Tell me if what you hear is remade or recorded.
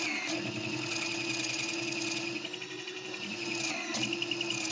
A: recorded